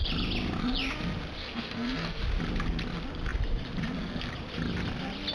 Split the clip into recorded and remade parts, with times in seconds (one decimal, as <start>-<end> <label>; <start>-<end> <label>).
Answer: 0.0-1.4 recorded; 1.4-2.2 remade; 2.2-5.3 recorded